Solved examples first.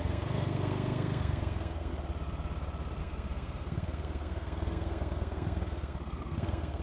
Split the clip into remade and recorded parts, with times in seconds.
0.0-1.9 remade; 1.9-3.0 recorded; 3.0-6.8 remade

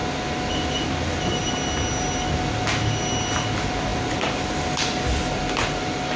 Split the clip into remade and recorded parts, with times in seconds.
0.0-6.2 recorded

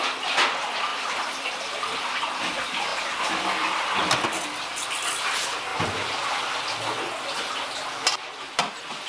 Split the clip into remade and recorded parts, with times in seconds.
0.0-0.9 recorded; 0.9-1.7 remade; 1.7-5.7 recorded; 5.7-6.2 remade; 6.2-9.1 recorded

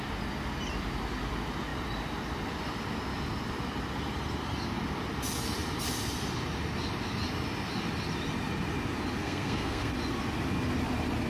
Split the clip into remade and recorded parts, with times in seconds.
0.0-9.2 recorded; 9.2-9.9 remade; 9.9-11.3 recorded

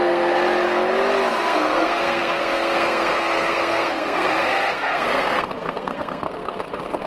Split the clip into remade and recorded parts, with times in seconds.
0.0-0.4 remade; 0.4-1.3 recorded; 1.3-7.1 remade

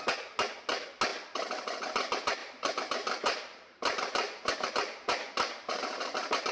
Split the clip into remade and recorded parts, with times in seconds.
0.0-2.4 recorded; 2.4-6.5 remade

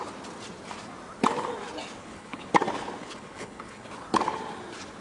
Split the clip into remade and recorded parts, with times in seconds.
0.0-2.0 recorded; 2.0-2.5 remade; 2.5-3.0 recorded; 3.0-3.9 remade; 3.9-5.0 recorded